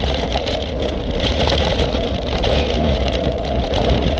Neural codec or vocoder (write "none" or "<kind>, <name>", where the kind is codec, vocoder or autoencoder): vocoder, Vocos